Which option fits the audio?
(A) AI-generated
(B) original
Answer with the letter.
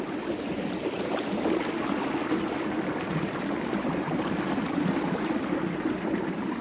B